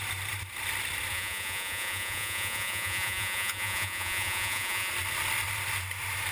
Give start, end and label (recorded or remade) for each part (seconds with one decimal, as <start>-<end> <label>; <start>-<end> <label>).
0.0-1.1 recorded; 1.1-4.9 remade; 4.9-6.3 recorded